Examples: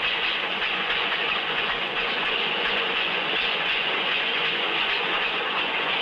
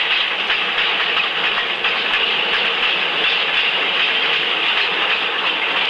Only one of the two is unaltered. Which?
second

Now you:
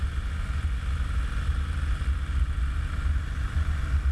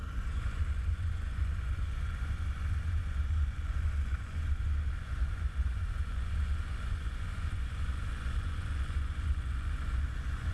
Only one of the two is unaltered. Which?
first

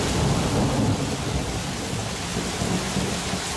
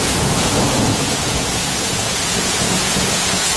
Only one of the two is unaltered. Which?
first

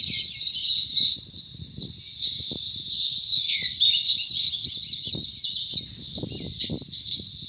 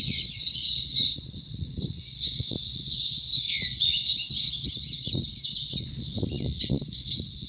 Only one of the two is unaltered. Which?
first